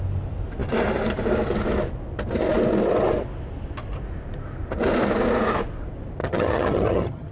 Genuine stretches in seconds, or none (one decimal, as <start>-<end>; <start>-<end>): 0.0-6.2